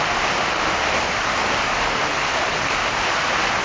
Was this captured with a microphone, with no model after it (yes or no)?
yes